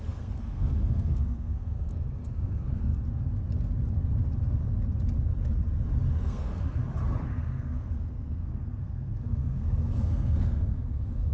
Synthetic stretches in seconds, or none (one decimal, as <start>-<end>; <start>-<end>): 0.0-2.9; 6.1-6.8; 7.3-11.3